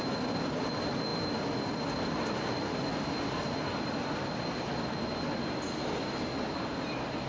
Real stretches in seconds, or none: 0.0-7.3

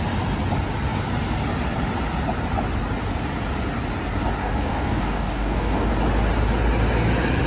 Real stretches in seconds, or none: 0.0-4.4; 5.9-7.5